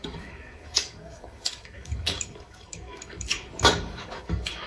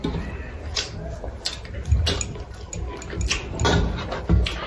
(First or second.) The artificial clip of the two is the first